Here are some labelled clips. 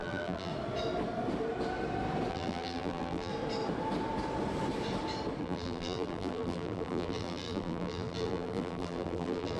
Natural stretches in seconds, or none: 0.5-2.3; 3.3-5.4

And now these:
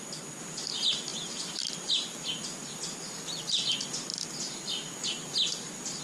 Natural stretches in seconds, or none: 0.0-1.1; 1.9-6.0